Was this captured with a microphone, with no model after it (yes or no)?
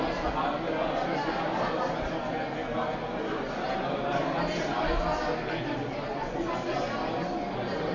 yes